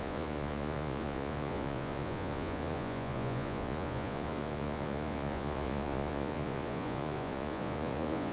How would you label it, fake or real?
fake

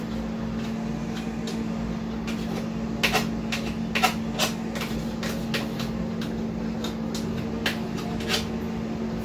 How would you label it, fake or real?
real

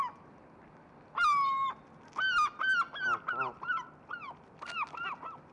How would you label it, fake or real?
real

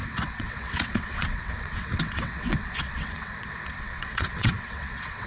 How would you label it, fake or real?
fake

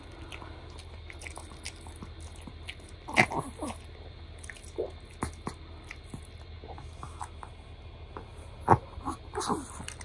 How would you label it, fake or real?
real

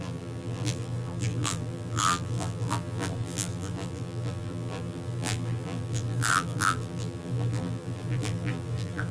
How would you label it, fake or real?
fake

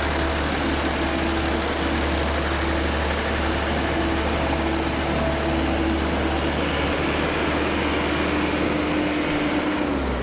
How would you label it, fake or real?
real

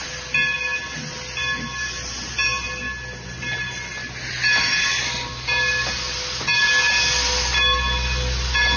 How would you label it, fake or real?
real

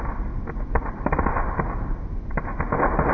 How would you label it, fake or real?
real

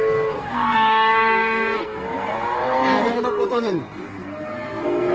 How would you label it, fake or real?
fake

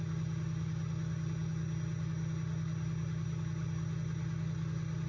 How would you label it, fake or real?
real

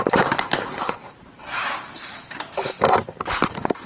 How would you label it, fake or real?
fake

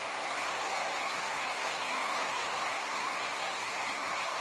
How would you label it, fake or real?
fake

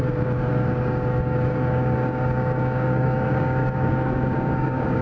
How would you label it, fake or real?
fake